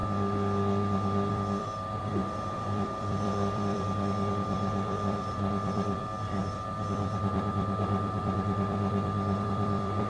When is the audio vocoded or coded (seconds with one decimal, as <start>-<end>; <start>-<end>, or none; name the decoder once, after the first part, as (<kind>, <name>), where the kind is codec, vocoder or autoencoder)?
1.3-10.1 (vocoder, BigVGAN v2)